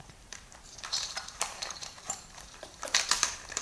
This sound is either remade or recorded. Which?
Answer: remade